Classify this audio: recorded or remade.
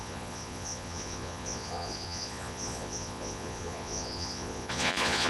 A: remade